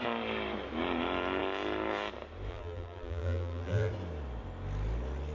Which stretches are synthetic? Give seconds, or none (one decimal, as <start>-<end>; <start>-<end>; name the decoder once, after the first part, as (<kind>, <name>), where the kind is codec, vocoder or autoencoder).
2.5-3.9 (vocoder, BigVGAN v2)